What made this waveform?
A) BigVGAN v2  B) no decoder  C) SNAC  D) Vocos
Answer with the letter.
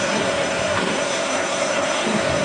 C